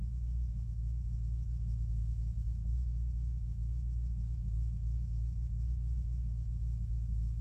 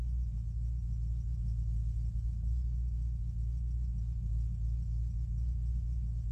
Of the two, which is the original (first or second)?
second